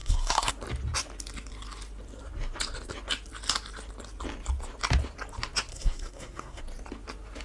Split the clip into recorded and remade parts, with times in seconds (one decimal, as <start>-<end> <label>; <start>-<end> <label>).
0.0-0.5 remade; 0.5-5.7 recorded; 5.7-6.6 remade; 6.6-7.4 recorded